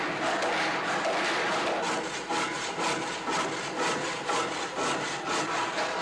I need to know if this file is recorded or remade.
recorded